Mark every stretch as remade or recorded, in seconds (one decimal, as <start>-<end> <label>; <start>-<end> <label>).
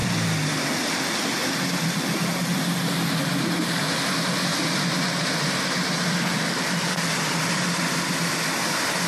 0.0-0.7 remade; 0.7-1.4 recorded; 1.4-3.5 remade; 3.5-4.5 recorded; 4.5-9.1 remade